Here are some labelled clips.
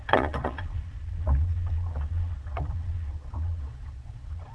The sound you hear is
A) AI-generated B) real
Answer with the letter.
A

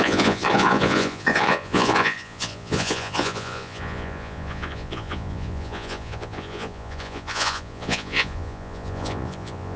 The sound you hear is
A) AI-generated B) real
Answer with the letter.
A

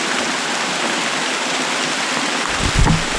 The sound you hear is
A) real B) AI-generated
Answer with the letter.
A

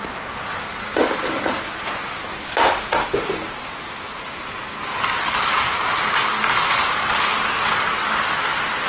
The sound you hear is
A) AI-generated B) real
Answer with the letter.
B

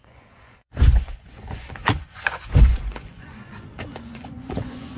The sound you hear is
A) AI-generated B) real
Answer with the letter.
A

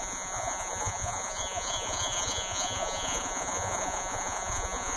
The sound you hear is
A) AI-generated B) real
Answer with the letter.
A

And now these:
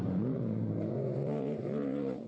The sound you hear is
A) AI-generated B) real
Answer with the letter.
A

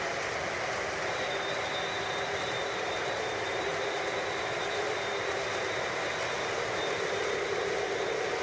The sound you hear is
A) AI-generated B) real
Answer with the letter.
B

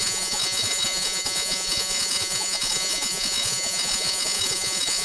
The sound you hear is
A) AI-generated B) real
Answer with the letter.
A